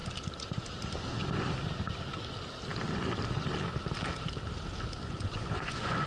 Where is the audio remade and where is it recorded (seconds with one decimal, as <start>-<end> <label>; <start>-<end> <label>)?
0.0-5.0 recorded; 5.0-6.1 remade

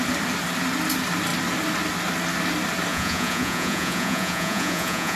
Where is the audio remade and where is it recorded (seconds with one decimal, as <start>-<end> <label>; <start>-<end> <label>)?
0.0-2.9 recorded; 2.9-5.2 remade

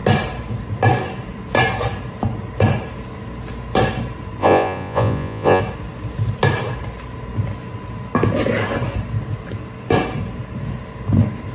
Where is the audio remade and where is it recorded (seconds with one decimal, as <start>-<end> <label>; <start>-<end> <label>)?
0.0-4.4 recorded; 4.4-5.6 remade; 5.6-11.5 recorded